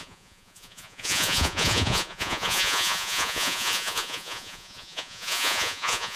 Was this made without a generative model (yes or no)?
no